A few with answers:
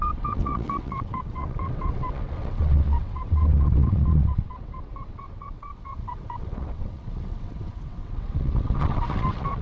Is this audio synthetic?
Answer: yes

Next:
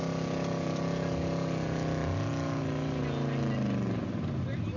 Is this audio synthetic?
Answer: no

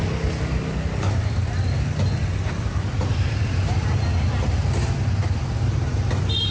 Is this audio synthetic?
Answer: no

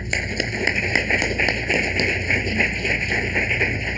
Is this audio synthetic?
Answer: no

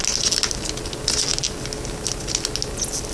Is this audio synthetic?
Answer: no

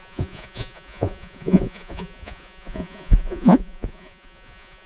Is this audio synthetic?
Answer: yes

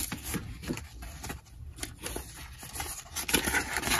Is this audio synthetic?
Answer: no